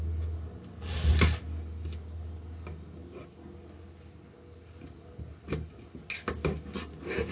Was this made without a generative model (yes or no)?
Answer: yes